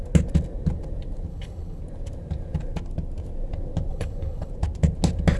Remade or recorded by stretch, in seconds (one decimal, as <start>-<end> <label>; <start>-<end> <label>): 0.0-1.3 recorded; 1.3-1.8 remade; 1.8-3.9 recorded; 3.9-4.5 remade; 4.5-5.4 recorded